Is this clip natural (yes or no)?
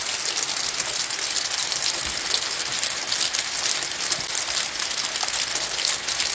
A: yes